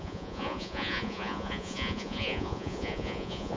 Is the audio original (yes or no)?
no